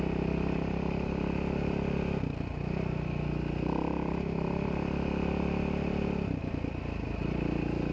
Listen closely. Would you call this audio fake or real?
real